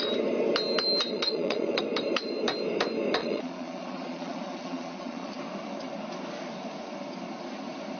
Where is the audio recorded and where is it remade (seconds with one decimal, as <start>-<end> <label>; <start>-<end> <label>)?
0.0-1.1 recorded; 1.1-1.8 remade; 1.8-3.2 recorded; 3.2-5.3 remade; 5.3-8.0 recorded